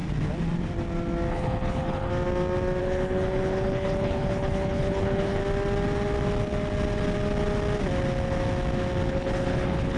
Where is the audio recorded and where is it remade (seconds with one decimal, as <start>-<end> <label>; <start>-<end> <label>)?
0.0-1.3 recorded; 1.3-2.1 remade; 2.1-2.8 recorded; 2.8-5.4 remade; 5.4-9.1 recorded; 9.1-10.0 remade